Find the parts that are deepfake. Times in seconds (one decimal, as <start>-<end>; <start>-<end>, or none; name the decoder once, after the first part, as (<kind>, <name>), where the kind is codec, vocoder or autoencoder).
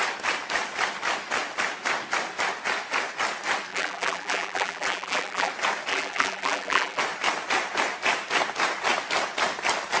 3.7-5.5 (vocoder, BigVGAN v2); 5.9-7.0